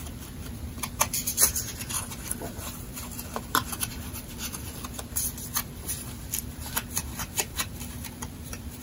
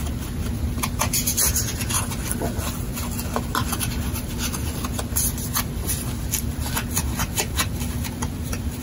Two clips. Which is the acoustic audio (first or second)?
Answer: second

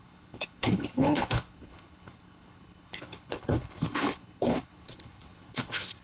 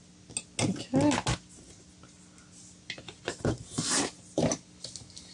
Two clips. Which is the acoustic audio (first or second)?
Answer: second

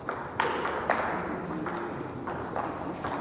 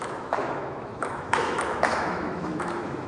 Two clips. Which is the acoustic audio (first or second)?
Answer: first